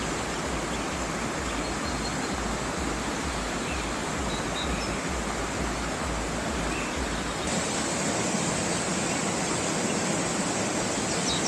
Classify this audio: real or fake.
real